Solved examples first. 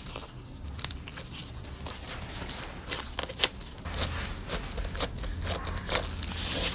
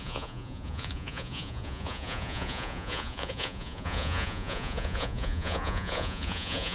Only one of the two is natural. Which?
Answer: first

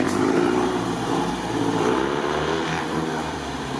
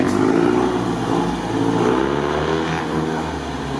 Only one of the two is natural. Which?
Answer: second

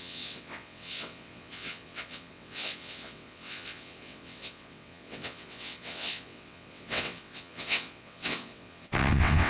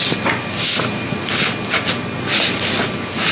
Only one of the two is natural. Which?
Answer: second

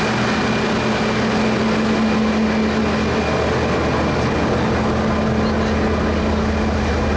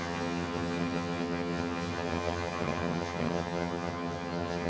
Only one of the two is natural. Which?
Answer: first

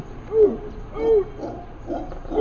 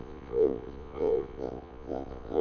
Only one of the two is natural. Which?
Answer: first